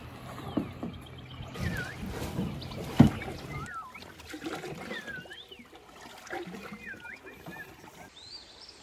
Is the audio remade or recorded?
recorded